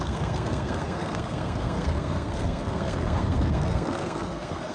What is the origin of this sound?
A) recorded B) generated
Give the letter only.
B